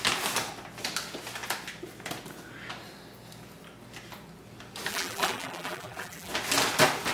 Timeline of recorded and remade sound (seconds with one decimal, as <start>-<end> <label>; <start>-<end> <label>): 0.0-4.9 recorded; 4.9-6.3 remade; 6.3-7.1 recorded